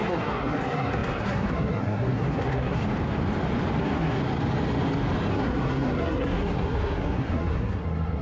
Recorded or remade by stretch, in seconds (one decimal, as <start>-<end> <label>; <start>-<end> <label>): 0.0-2.8 remade; 2.8-3.8 recorded; 3.8-4.2 remade; 4.2-5.3 recorded; 5.3-8.2 remade